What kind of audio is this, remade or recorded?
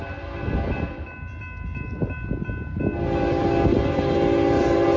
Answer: recorded